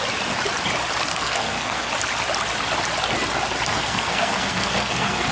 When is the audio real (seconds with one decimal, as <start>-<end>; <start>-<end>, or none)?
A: 0.0-1.1; 1.9-3.7